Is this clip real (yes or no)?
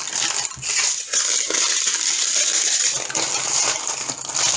yes